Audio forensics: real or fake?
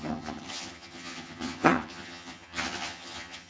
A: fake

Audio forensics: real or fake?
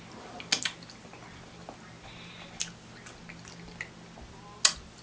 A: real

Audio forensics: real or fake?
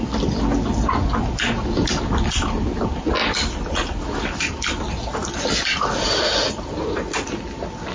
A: real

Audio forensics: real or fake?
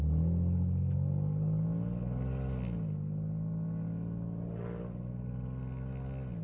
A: real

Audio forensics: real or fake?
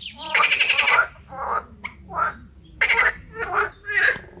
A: real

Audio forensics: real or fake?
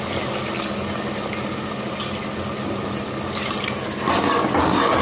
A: real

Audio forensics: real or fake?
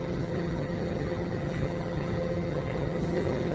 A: fake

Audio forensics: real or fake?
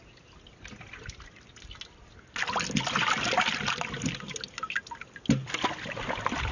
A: real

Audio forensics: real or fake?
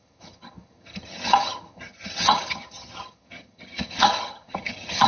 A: fake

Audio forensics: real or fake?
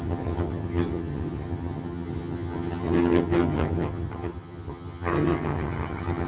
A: fake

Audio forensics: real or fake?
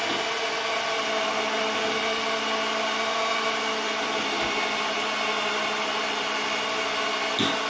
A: real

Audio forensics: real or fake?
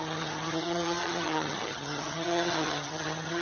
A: fake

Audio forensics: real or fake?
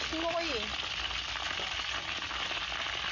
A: real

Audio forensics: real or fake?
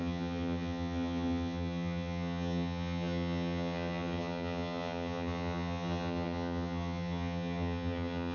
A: fake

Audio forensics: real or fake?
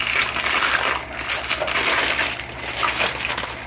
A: real